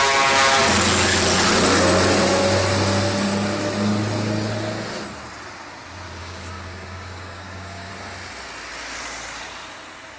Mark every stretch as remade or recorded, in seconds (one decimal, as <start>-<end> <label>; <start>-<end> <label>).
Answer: 0.0-6.2 recorded; 6.2-7.9 remade; 7.9-10.2 recorded